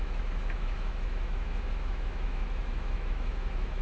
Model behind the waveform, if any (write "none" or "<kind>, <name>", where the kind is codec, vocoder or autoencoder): autoencoder, DAC-VAE